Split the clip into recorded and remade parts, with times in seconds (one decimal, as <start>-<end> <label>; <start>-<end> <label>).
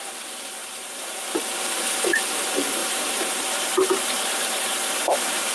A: 0.0-0.6 recorded; 0.6-1.1 remade; 1.1-2.8 recorded; 2.8-5.5 remade